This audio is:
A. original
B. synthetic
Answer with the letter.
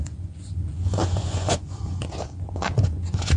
B